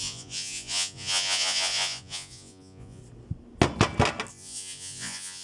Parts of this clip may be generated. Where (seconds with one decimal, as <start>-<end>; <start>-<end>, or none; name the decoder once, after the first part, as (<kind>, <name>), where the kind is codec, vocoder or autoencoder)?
0.0-3.0 (vocoder, Vocos); 4.3-5.4